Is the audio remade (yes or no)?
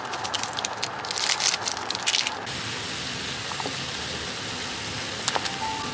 no